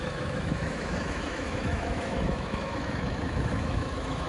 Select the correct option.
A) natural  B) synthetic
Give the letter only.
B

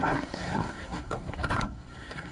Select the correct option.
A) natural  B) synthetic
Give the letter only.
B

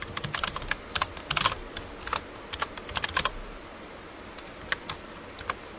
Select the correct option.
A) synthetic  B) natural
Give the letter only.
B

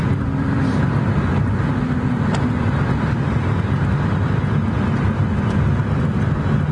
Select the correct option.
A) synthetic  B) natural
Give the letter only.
B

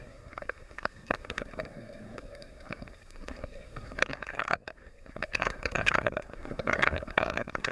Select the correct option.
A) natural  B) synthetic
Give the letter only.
B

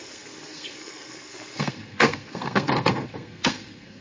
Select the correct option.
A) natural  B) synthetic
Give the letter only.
B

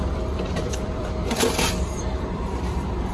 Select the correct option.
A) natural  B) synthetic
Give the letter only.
B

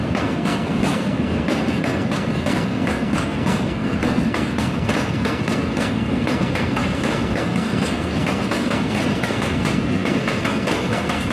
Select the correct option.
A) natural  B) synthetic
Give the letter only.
B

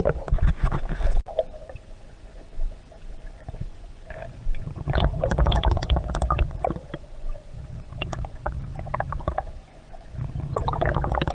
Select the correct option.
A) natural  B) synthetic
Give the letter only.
B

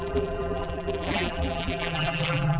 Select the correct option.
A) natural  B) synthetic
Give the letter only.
B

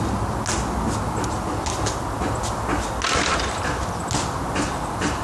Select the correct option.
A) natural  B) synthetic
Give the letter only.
A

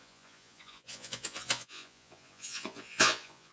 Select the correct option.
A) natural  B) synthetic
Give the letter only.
B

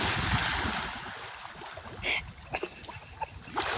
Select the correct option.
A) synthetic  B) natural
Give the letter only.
B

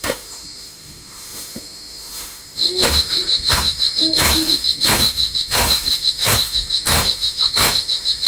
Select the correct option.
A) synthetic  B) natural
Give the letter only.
A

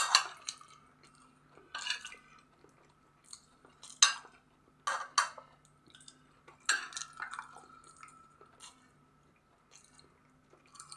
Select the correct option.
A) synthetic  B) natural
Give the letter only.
B